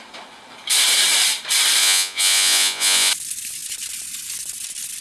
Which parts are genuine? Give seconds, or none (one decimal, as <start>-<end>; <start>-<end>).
0.0-1.8; 3.1-5.0